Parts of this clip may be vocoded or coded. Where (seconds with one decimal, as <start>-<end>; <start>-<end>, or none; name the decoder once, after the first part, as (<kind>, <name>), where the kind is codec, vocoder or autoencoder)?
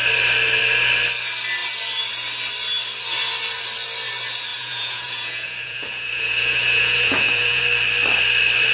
4.5-7.6 (vocoder, Vocos)